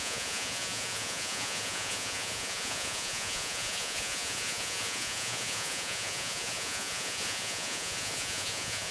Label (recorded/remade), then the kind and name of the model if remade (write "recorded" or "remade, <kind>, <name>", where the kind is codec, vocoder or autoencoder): remade, vocoder, Vocos